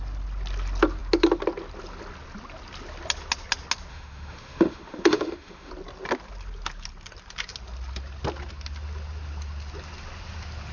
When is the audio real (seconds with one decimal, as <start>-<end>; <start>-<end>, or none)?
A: 0.0-3.9; 5.7-10.7